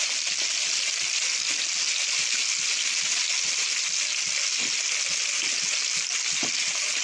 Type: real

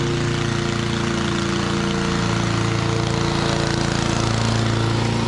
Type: real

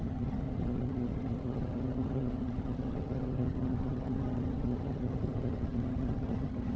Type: fake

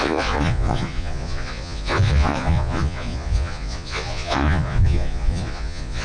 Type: fake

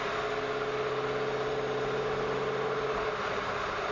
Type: real